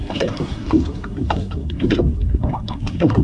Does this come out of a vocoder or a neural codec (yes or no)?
yes